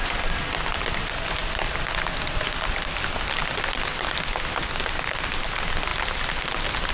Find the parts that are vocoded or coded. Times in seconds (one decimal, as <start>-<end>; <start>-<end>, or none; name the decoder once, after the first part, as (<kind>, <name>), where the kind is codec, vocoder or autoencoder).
1.4-3.4 (vocoder, BigVGAN v2)